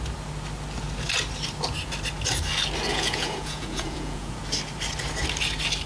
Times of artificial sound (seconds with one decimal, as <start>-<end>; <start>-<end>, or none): 2.9-4.4